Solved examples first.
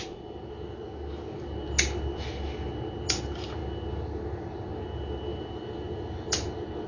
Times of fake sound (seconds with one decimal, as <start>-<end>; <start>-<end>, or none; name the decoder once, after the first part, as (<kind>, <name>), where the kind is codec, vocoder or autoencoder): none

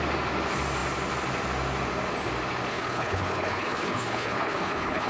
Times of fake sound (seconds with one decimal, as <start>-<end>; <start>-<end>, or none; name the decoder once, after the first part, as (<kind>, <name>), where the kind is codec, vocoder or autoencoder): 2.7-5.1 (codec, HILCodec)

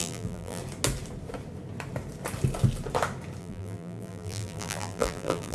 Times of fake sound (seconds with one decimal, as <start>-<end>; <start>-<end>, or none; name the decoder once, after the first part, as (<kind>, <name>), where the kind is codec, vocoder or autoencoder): 0.0-0.6 (vocoder, BigVGAN v2); 3.4-5.5

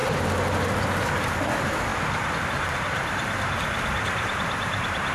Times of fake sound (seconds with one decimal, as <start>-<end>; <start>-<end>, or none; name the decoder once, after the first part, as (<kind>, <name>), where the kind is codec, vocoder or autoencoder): 1.9-5.1 (vocoder, BigVGAN v2)

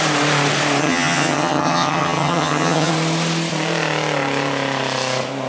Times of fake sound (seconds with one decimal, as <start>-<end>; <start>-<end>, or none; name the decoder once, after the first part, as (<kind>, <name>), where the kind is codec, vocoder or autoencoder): 0.8-2.9 (vocoder, HiFi-GAN)

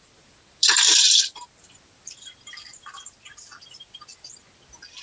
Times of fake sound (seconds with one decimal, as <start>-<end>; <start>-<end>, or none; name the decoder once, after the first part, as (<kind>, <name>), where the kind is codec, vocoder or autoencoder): none

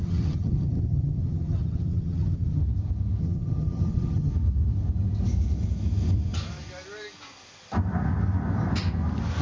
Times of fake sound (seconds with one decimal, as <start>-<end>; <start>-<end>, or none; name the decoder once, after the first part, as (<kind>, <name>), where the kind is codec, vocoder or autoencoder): 0.0-2.6 (vocoder, HiFi-GAN); 3.2-4.3

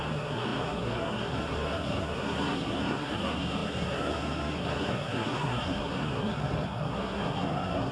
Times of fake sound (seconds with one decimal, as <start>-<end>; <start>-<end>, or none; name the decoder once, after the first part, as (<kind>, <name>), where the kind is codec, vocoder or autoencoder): 0.0-7.9 (codec, SNAC)